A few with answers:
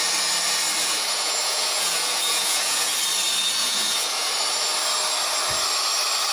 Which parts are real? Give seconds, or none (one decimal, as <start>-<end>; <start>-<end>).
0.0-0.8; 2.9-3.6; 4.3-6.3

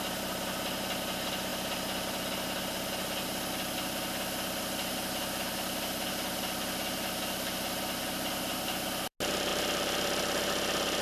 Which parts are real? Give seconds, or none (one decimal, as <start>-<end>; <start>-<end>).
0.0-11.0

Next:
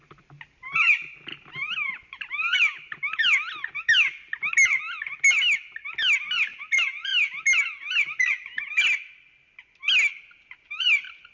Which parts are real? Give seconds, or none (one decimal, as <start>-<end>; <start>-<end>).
0.0-11.3

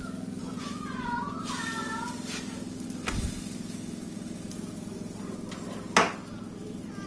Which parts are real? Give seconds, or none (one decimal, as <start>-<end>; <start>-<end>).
0.0-0.4; 1.4-7.1